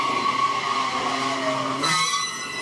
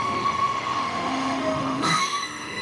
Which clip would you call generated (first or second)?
second